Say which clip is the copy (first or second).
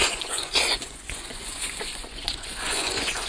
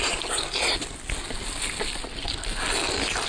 first